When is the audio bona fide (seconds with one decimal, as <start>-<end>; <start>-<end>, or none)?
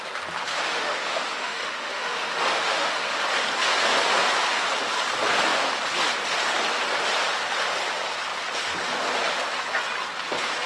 0.0-0.7; 3.2-10.7